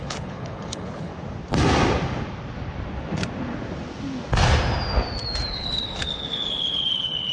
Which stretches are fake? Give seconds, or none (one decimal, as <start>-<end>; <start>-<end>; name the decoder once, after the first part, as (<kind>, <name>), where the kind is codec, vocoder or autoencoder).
0.0-1.1 (codec, HILCodec); 5.5-7.3